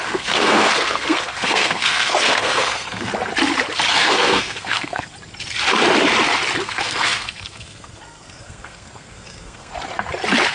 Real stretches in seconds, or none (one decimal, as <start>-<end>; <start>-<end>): 3.1-3.9; 5.1-6.6; 9.7-10.5